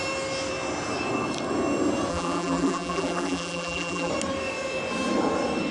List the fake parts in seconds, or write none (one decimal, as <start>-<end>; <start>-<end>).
2.1-4.1